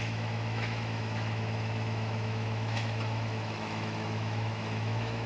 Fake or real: fake